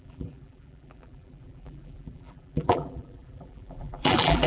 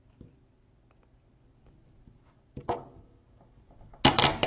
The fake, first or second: first